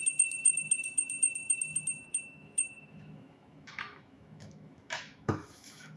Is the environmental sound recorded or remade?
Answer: remade